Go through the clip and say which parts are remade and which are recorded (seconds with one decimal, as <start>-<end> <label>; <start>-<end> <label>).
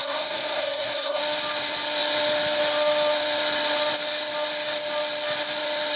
0.0-1.2 remade; 1.2-6.0 recorded